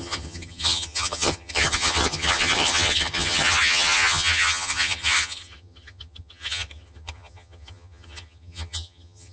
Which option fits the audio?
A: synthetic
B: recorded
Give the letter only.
A